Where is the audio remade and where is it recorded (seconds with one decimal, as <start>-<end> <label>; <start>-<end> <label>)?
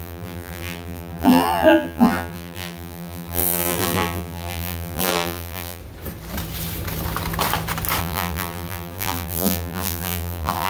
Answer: 0.0-5.8 remade; 5.8-8.0 recorded; 8.0-10.7 remade